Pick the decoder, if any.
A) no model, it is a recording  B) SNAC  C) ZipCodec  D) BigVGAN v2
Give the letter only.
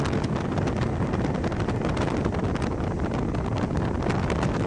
A